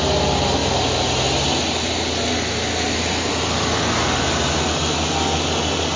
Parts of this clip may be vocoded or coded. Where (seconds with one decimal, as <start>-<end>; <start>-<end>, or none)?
none